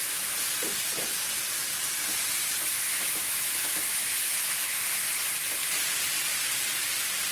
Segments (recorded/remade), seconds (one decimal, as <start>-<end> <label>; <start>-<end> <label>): 0.0-2.9 recorded; 2.9-4.8 remade; 4.8-7.3 recorded